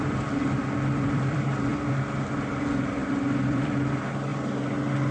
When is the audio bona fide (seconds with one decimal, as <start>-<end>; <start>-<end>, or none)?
4.3-5.1